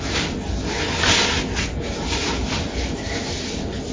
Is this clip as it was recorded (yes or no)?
yes